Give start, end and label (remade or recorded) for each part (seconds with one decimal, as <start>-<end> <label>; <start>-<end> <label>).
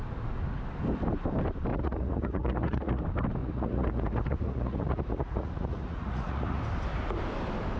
0.0-1.7 recorded; 1.7-3.0 remade; 3.0-3.4 recorded; 3.4-6.6 remade; 6.6-7.8 recorded